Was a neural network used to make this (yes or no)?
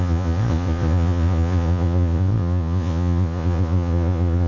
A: yes